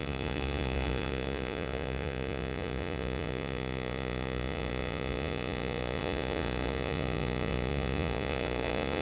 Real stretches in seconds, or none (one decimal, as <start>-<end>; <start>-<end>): none